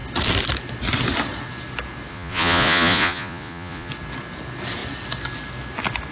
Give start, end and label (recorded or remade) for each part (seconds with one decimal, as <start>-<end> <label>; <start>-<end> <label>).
0.0-2.1 recorded; 2.1-3.9 remade; 3.9-6.1 recorded